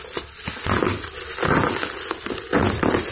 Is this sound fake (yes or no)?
no